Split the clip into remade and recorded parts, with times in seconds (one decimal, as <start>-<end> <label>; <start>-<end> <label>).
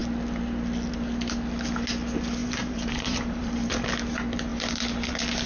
0.0-2.4 recorded; 2.4-3.7 remade; 3.7-5.5 recorded